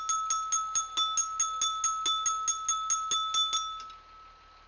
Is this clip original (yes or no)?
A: yes